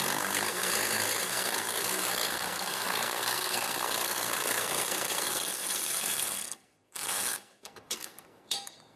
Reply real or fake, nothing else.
fake